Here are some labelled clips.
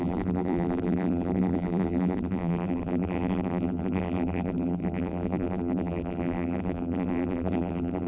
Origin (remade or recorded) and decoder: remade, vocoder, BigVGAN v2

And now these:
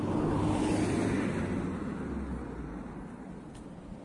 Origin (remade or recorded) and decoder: recorded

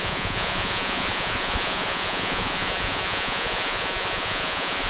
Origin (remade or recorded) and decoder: remade, vocoder, Vocos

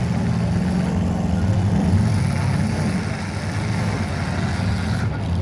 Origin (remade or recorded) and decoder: recorded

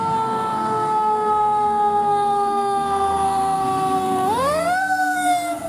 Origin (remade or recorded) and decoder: remade, codec, SNAC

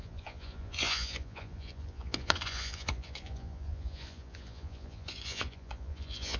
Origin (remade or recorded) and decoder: remade, vocoder, Vocos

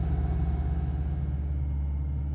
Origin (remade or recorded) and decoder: recorded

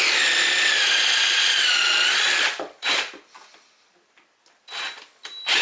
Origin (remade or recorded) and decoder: recorded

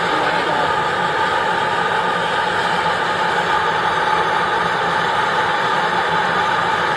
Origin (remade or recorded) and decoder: recorded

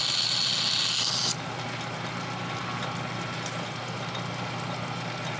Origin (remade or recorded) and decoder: recorded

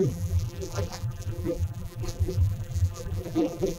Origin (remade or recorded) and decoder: remade, vocoder, BigVGAN v2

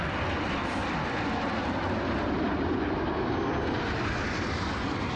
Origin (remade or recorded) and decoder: recorded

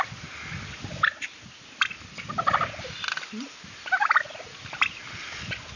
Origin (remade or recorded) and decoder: recorded